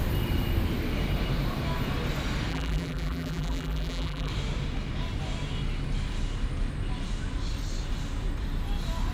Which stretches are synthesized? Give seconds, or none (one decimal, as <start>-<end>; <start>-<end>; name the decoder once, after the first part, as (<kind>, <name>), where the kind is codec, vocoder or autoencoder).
2.5-4.3 (vocoder, BigVGAN v2)

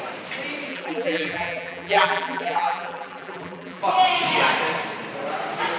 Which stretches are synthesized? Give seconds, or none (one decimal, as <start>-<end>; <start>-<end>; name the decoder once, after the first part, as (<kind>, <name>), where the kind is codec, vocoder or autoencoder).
0.7-3.8 (vocoder, BigVGAN v2)

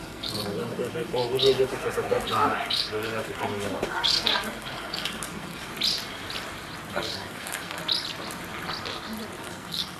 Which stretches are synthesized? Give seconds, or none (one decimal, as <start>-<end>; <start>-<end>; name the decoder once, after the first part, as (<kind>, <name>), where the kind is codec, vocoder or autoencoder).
0.0-5.7 (codec, SNAC); 6.9-7.8; 9.4-10.0

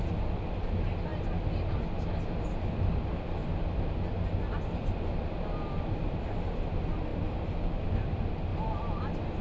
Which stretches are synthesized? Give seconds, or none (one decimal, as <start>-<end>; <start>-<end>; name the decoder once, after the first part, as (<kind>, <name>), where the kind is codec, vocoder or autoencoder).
none